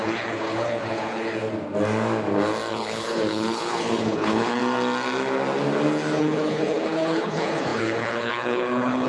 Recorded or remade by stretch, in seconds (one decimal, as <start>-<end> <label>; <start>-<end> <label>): 0.0-1.4 remade; 1.4-2.7 recorded; 2.7-4.6 remade; 4.6-6.2 recorded; 6.2-9.1 remade